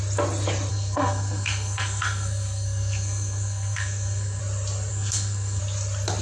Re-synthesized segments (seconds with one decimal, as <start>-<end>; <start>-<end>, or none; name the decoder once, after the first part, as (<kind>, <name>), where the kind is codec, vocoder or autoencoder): 0.7-4.4 (codec, SNAC); 4.9-5.6